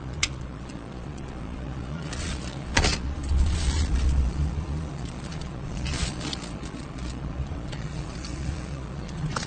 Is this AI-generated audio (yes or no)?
yes